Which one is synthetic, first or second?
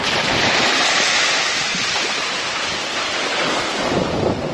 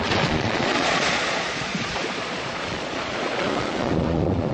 second